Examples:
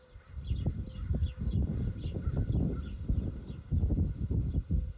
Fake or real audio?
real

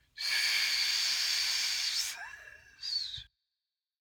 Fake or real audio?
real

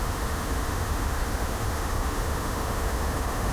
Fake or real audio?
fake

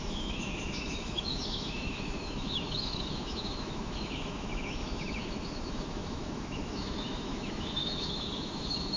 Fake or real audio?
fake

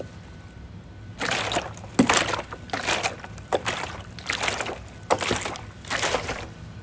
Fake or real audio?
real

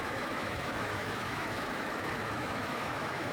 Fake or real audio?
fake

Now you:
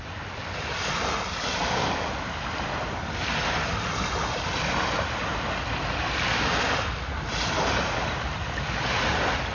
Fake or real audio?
real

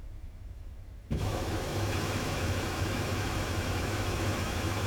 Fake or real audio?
fake